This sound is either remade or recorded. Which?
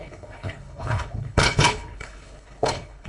remade